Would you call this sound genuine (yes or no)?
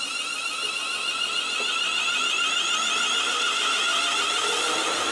yes